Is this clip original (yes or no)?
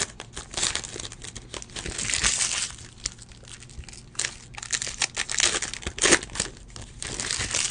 yes